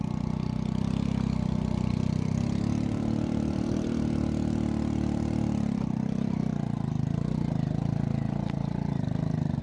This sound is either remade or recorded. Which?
recorded